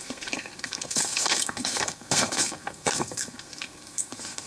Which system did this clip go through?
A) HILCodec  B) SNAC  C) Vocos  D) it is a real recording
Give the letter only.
B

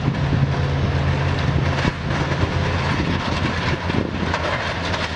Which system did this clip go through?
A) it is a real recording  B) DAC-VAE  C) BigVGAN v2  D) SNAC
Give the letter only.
A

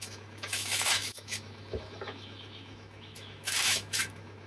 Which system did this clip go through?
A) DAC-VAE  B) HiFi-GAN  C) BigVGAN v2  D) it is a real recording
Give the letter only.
A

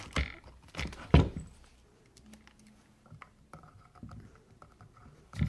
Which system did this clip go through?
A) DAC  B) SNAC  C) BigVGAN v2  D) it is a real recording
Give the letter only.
D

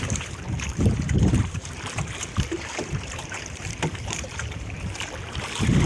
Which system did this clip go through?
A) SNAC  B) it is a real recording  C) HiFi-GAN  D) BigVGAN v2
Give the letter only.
D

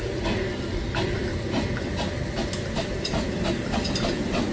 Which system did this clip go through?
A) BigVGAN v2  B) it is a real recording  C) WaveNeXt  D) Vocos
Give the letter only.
B